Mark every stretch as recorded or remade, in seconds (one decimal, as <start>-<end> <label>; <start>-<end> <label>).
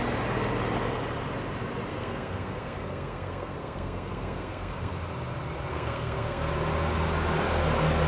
0.0-1.9 recorded; 1.9-4.9 remade; 4.9-5.7 recorded; 5.7-6.5 remade; 6.5-8.1 recorded